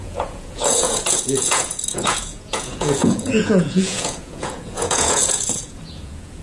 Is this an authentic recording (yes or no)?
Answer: no